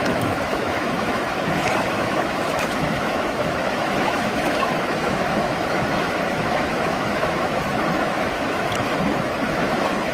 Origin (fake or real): fake